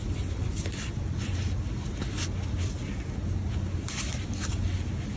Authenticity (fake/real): real